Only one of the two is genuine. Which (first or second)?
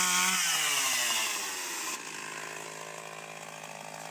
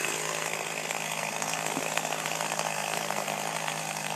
first